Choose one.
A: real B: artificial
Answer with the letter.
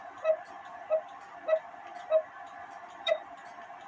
B